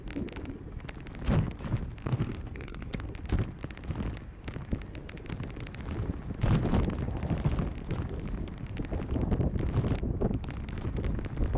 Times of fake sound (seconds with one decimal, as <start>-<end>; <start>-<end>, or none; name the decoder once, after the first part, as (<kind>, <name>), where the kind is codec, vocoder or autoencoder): 2.0-3.1 (codec, SNAC)